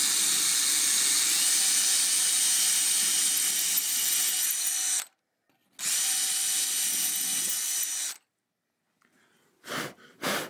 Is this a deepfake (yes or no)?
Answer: no